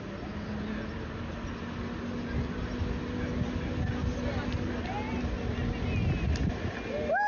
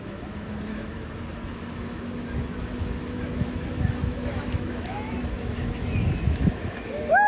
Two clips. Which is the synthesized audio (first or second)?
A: second